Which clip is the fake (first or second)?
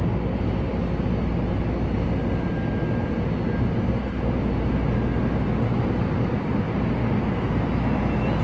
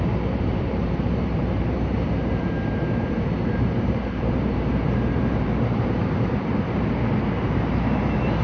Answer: second